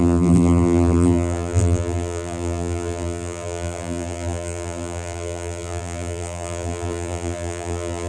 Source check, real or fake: fake